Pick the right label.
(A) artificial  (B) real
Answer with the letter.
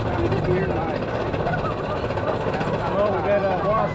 B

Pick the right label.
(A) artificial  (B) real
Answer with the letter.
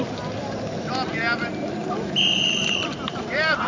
A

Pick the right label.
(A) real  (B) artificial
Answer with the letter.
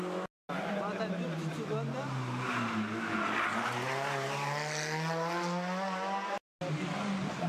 A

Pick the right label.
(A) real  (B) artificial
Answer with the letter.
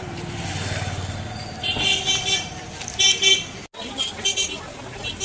A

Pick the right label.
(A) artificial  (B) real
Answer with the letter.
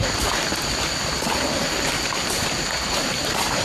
A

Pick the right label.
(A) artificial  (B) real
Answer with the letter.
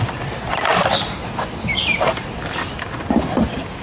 A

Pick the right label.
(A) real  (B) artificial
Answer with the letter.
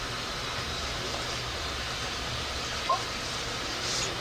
B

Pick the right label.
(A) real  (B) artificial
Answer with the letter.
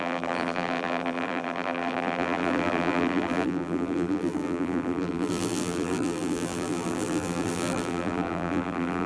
B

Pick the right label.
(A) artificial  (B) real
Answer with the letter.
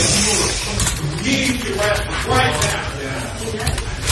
A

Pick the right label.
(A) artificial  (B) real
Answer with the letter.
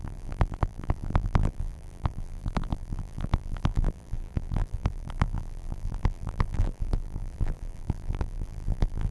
A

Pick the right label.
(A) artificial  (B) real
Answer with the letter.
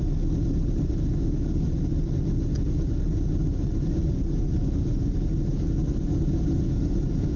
B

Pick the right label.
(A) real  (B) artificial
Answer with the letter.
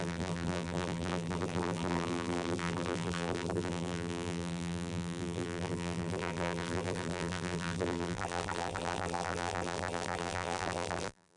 B